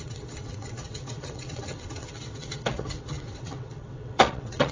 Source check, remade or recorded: remade